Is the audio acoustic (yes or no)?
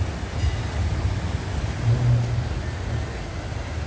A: yes